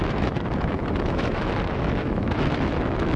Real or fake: fake